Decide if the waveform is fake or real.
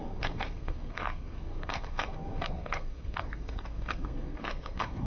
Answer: fake